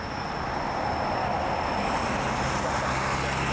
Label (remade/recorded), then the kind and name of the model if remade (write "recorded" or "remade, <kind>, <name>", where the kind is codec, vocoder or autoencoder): recorded